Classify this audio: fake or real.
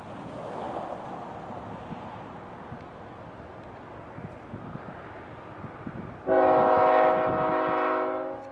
real